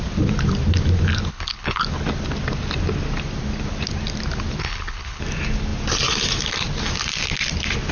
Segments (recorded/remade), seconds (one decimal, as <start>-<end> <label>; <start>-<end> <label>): 0.0-1.3 recorded; 1.3-1.8 remade; 1.8-4.6 recorded; 4.6-5.2 remade; 5.2-7.9 recorded